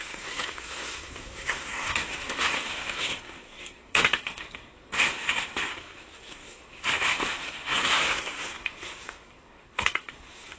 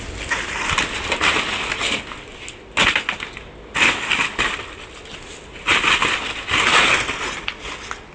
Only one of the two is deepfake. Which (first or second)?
first